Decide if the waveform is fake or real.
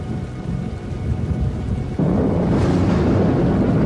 real